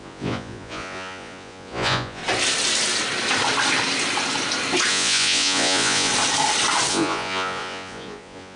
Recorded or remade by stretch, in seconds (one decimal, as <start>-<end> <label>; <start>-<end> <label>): 0.0-2.2 remade; 2.2-4.9 recorded; 4.9-6.1 remade; 6.1-6.9 recorded; 6.9-8.6 remade